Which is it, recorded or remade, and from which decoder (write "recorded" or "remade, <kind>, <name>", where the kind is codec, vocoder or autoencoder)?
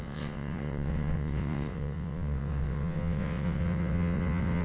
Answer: remade, vocoder, WaveNeXt